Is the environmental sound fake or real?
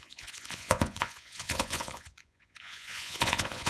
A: fake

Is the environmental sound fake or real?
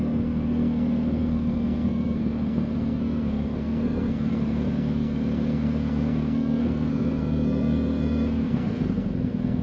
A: fake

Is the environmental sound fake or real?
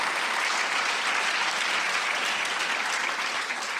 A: real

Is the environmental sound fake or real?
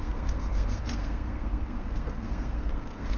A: fake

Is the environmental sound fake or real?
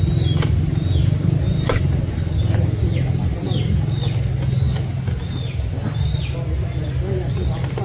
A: real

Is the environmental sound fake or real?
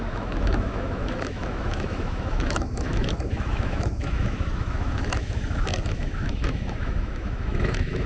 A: fake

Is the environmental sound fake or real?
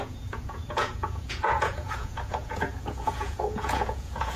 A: fake